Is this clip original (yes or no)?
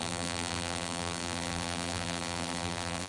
no